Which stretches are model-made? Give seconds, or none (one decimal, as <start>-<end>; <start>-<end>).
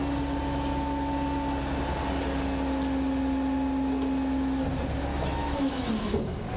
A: 5.1-5.9